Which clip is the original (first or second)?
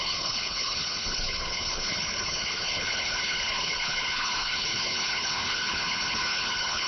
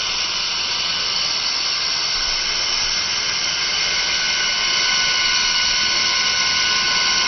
second